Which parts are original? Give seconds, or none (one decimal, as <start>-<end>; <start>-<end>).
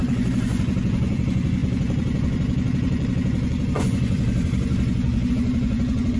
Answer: none